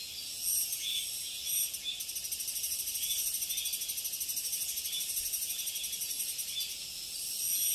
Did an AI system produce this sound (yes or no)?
no